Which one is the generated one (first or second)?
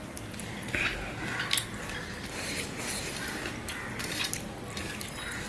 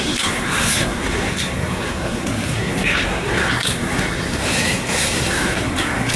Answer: second